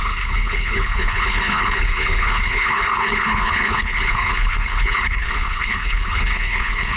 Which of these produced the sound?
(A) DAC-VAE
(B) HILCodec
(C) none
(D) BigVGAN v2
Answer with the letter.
B